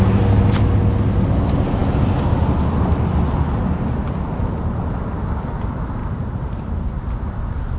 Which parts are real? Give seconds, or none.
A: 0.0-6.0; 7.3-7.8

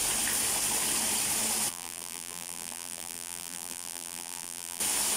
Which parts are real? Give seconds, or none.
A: 0.0-1.7; 4.8-5.2

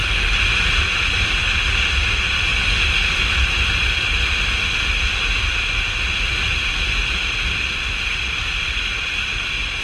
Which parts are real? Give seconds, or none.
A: 0.0-9.8